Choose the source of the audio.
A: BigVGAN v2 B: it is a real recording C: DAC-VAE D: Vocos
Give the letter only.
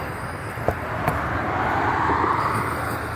B